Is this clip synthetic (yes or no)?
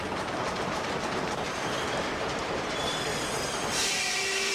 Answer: yes